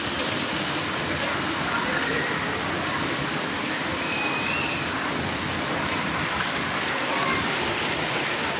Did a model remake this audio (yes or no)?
no